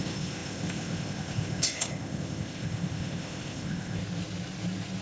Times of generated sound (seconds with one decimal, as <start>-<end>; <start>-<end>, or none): 0.0-4.0